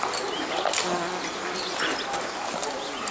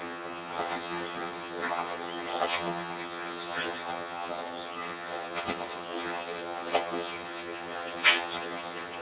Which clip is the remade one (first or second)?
second